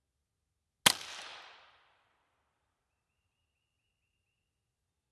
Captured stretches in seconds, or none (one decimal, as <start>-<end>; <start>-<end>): 0.0-5.1